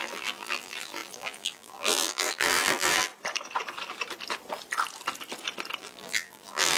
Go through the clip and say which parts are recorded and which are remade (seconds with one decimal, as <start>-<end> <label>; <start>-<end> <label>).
0.0-3.1 remade; 3.1-5.8 recorded; 5.8-6.8 remade